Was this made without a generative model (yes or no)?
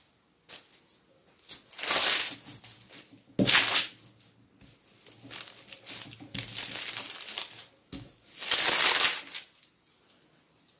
yes